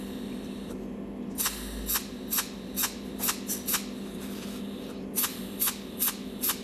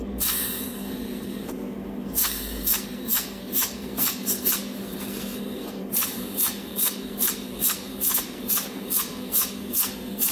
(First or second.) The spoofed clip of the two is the second